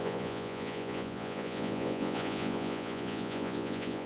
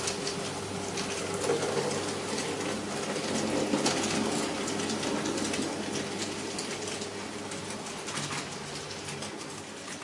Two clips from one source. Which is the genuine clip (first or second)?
second